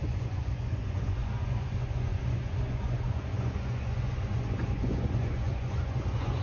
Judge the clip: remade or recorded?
remade